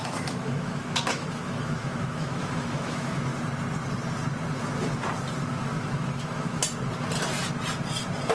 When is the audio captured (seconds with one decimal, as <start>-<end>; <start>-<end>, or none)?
3.3-5.5; 6.6-8.3

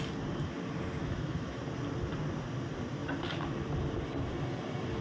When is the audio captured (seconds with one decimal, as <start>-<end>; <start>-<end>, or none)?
0.0-1.0; 1.6-5.0

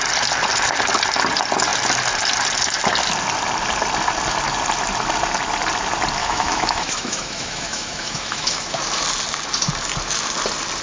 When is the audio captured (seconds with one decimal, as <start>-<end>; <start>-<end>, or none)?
0.0-6.2; 8.8-10.8

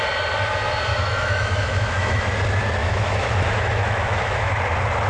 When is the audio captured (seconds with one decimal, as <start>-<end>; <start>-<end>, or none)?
0.0-0.9; 2.3-2.8; 4.6-5.1

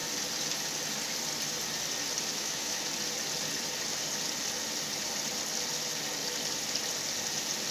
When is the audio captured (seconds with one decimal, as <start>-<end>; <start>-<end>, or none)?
0.0-2.3; 2.8-7.7

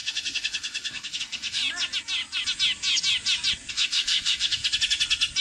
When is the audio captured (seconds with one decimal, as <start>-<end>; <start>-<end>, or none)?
1.6-3.7; 4.6-5.4